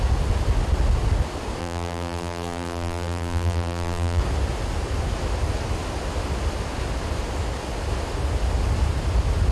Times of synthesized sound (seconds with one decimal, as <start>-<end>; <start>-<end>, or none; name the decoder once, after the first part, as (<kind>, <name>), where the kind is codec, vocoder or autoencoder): 1.6-4.2 (vocoder, BigVGAN v2)